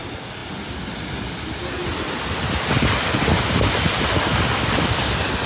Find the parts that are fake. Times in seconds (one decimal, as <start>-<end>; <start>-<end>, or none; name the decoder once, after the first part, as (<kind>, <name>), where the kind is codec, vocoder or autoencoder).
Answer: none